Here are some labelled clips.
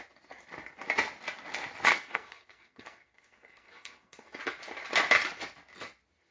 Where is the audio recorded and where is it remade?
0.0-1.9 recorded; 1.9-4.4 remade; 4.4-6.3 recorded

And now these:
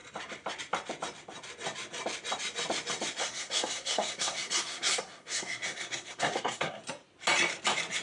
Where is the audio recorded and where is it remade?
0.0-3.2 recorded; 3.2-6.8 remade; 6.8-8.0 recorded